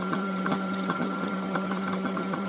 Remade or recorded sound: remade